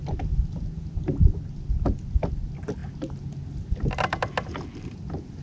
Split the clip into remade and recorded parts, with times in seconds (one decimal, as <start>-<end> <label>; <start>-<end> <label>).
0.0-5.4 recorded